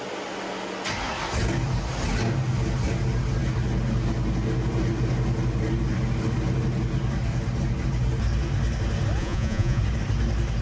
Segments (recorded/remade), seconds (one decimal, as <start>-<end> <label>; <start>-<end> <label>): 0.0-9.2 recorded; 9.2-9.8 remade; 9.8-10.6 recorded